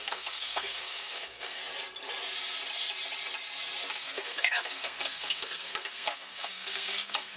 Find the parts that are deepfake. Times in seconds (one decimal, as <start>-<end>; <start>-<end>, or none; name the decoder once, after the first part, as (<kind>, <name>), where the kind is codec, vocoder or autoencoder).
0.0-1.6 (codec, SNAC); 3.9-7.4